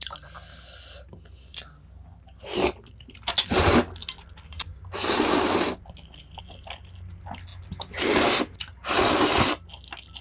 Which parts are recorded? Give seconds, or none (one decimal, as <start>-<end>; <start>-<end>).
0.0-10.2